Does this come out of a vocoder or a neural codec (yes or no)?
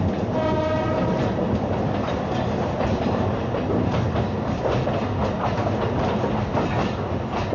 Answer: no